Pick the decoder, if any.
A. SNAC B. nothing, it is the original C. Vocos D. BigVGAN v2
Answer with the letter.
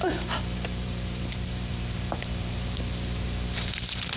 D